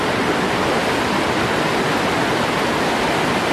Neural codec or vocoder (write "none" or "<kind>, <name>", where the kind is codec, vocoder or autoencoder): none